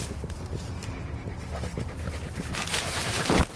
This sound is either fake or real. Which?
fake